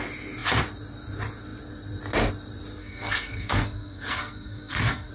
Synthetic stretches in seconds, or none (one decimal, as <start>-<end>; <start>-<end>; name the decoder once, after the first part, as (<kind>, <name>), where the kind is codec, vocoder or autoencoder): 2.8-5.1 (codec, SNAC)